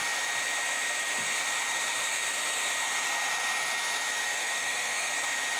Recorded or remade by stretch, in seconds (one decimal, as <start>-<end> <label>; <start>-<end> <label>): 0.0-4.4 recorded; 4.4-5.1 remade; 5.1-5.6 recorded

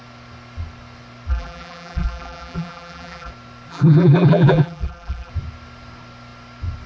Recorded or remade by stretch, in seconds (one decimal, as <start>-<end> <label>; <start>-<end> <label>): 0.0-1.3 recorded; 1.3-3.3 remade; 3.3-3.7 recorded; 3.7-5.3 remade; 5.3-6.9 recorded

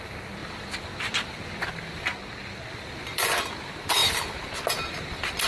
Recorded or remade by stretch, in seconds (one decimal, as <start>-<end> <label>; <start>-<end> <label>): 0.0-2.1 remade; 2.1-2.7 recorded; 2.7-4.0 remade; 4.0-4.9 recorded; 4.9-5.5 remade

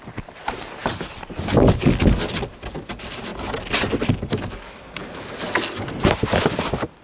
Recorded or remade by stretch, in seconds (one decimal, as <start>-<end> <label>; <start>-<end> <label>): 0.0-0.8 remade; 0.8-2.2 recorded; 2.2-3.3 remade; 3.3-4.3 recorded; 4.3-5.0 remade; 5.0-6.1 recorded; 6.1-7.0 remade

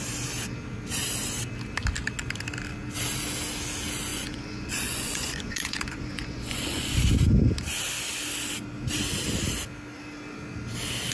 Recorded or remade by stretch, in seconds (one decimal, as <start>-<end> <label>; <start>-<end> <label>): 0.0-4.1 recorded; 4.1-7.1 remade; 7.1-11.1 recorded

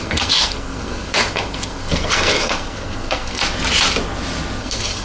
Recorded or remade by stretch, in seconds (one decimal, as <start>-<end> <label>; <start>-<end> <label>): 0.0-3.4 remade; 3.4-4.6 recorded; 4.6-5.0 remade

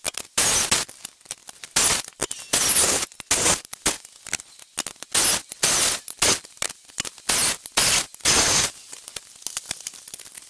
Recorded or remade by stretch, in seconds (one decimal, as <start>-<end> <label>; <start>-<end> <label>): 0.0-10.5 recorded